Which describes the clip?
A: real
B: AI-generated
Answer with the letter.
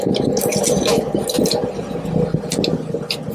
A